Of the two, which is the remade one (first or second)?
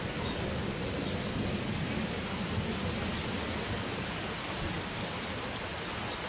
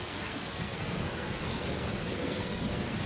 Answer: second